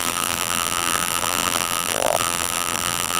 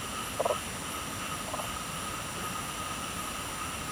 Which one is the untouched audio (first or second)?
second